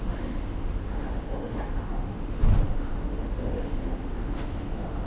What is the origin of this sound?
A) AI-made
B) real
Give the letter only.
A